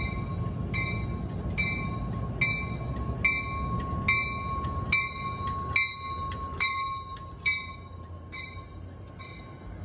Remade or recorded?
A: recorded